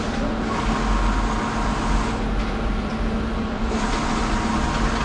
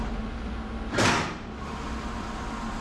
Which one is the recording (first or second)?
first